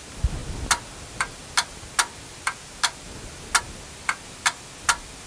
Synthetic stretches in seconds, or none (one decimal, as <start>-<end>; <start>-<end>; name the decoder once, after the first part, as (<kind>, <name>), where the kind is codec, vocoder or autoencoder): none